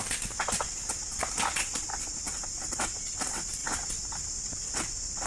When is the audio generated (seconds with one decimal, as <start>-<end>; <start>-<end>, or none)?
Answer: none